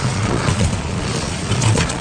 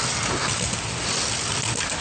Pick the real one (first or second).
second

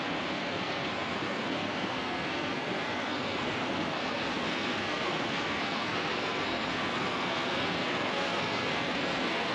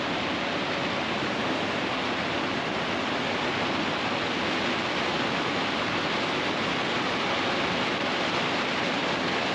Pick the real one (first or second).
second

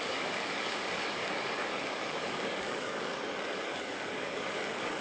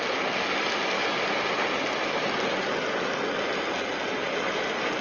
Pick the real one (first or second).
second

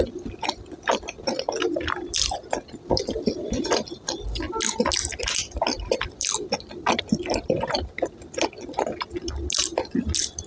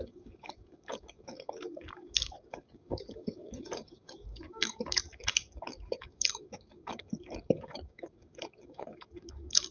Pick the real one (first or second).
first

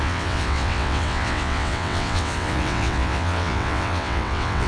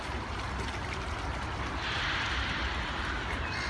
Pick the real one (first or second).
second